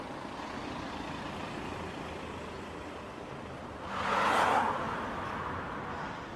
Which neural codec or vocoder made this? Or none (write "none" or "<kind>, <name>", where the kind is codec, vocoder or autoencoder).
none